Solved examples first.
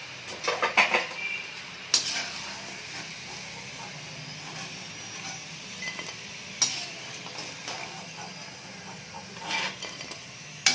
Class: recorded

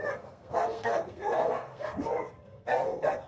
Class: remade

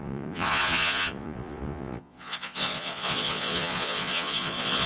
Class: remade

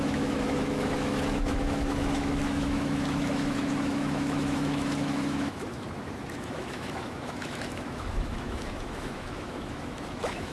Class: remade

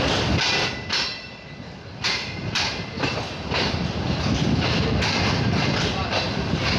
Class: recorded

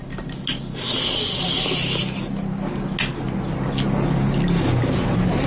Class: recorded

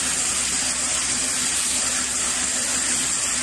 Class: recorded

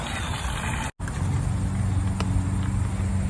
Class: recorded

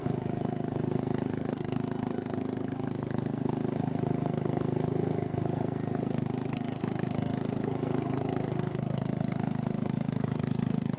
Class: remade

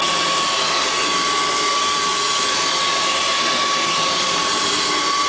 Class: recorded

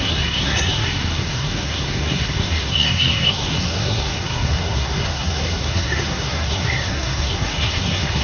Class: remade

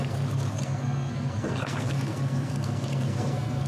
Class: remade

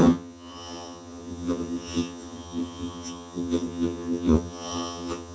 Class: remade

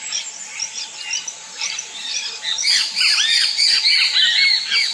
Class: recorded